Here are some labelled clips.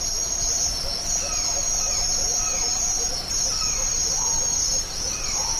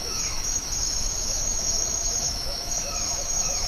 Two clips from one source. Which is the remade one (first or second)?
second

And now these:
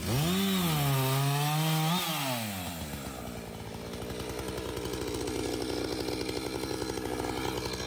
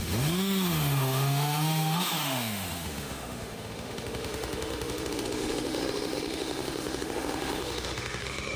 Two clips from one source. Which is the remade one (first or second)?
second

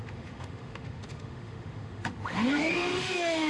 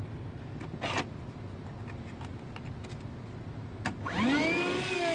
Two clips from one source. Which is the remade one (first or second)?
first